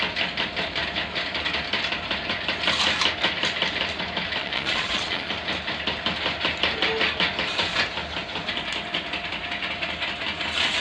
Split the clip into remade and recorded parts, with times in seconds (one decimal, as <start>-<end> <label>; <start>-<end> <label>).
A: 0.0-4.4 recorded; 4.4-5.3 remade; 5.3-10.8 recorded